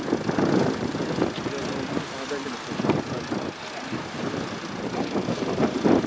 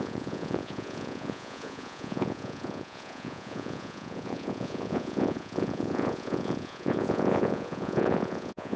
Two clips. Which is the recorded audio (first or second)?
first